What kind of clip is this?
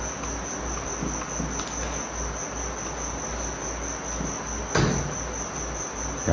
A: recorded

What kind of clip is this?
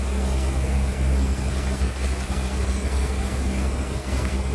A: remade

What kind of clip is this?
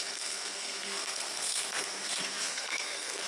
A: remade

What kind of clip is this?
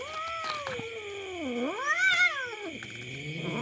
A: recorded